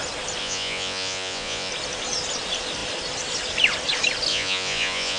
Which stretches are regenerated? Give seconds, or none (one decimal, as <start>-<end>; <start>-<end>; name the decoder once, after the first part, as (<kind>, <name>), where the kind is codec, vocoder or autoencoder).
0.4-1.7 (vocoder, Vocos); 4.3-5.2